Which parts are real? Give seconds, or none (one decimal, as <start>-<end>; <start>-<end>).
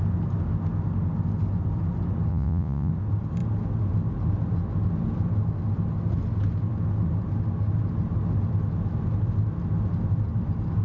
0.0-2.3; 2.9-10.8